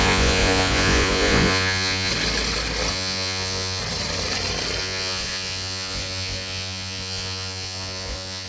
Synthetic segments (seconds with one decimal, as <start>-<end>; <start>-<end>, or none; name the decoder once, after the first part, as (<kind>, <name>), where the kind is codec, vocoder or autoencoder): 0.0-2.1 (vocoder, Vocos); 2.9-3.8; 4.8-8.5